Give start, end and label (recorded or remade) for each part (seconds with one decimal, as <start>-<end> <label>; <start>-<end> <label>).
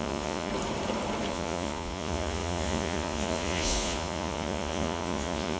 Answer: 0.0-0.5 remade; 0.5-1.3 recorded; 1.3-5.6 remade